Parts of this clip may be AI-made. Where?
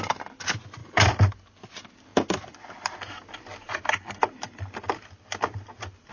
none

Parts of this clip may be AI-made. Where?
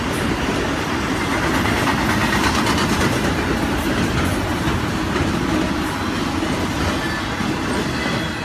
none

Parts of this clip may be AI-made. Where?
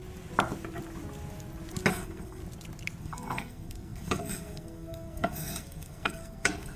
1.9-2.4 (codec, SNAC); 3.0-6.8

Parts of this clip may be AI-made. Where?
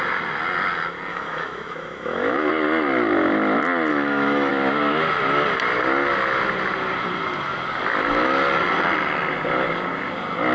1.1-2.5 (autoencoder, DAC-VAE); 3.9-4.5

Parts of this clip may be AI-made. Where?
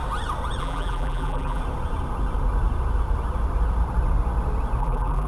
0.6-1.6 (vocoder, BigVGAN v2); 4.8-5.3